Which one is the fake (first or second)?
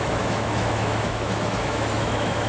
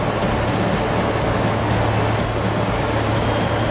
first